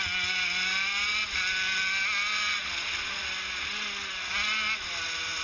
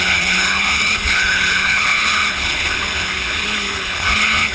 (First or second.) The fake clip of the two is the second